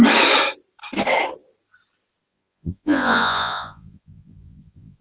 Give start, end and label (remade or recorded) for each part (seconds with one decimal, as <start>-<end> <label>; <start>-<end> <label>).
0.0-2.3 recorded; 2.3-5.0 remade